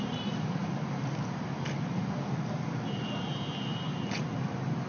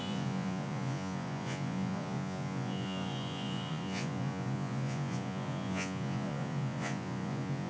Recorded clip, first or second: first